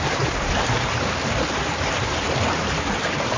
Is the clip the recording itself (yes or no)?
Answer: yes